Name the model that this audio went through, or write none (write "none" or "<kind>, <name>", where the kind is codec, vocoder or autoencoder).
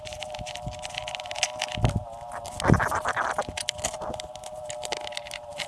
none